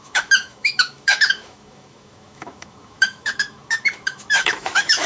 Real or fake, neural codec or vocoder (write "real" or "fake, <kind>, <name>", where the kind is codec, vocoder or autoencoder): fake, autoencoder, DAC-VAE